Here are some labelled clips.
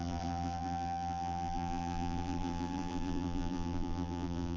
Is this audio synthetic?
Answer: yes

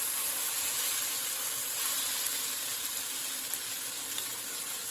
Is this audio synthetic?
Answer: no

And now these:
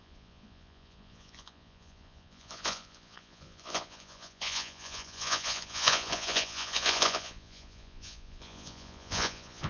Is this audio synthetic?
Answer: yes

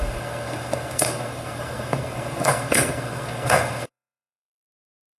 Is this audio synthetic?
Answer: yes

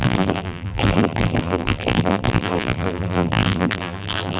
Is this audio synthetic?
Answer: yes